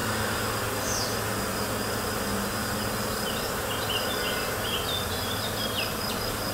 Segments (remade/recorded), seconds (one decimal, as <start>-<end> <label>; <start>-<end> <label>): 0.0-6.5 recorded